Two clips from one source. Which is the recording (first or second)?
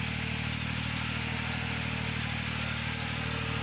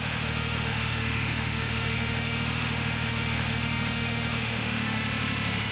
first